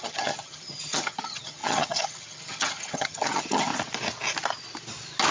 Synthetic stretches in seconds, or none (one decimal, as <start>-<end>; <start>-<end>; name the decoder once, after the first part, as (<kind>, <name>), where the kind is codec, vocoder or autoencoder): 0.0-3.7 (vocoder, HiFi-GAN)